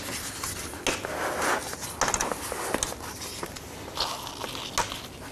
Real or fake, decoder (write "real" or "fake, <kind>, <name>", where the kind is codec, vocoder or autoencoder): real